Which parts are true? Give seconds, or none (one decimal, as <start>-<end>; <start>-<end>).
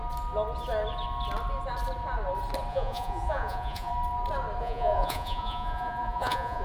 0.0-2.7; 3.9-4.6